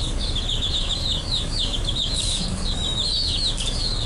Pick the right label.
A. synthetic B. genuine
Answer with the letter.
A